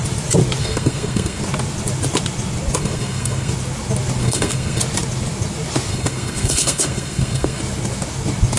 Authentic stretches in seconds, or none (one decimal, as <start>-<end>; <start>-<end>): 0.0-0.6; 1.4-2.8; 3.5-4.2; 4.8-5.9; 7.6-8.6